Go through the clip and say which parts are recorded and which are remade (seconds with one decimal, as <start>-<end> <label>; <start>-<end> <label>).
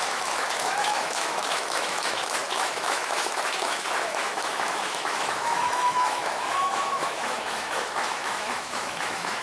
0.0-9.4 remade